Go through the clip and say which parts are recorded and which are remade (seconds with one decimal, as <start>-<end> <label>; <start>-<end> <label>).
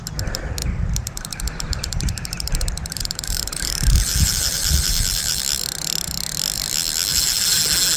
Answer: 0.0-0.6 recorded; 0.6-5.4 remade; 5.4-7.1 recorded; 7.1-7.6 remade; 7.6-8.0 recorded